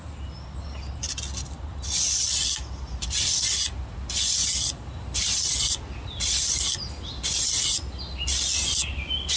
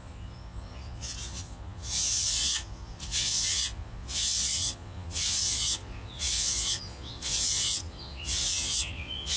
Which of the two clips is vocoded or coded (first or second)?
second